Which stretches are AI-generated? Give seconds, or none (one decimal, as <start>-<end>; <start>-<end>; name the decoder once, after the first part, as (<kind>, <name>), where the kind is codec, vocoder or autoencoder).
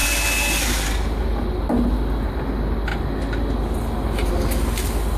none